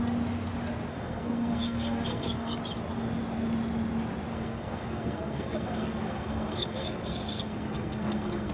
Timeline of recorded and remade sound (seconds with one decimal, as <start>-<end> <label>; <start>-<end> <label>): 0.0-0.9 recorded; 0.9-2.6 remade; 2.6-4.3 recorded; 4.3-8.5 remade